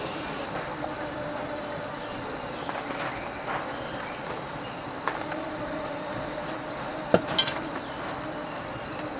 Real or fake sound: real